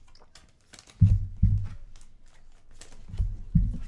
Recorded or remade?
recorded